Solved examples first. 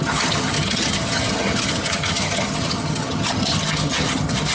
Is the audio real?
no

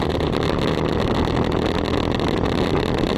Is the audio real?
yes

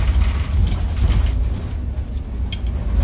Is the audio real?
yes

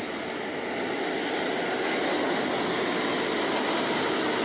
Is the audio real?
yes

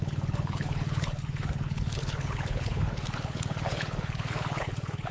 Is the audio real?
no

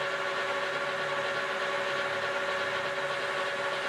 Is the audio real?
yes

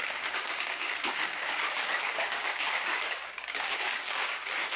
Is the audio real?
no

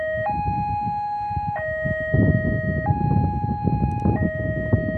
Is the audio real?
yes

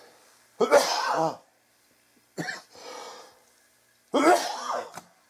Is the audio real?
yes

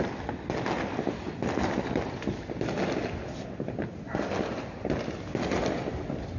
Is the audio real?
yes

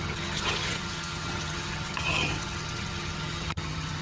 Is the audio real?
no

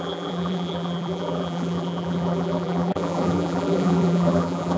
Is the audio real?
no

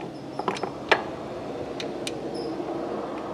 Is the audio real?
yes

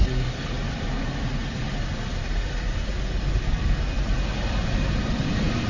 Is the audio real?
yes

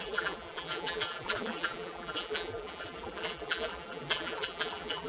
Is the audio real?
no